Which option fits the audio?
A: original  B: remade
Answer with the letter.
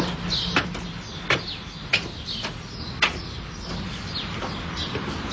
A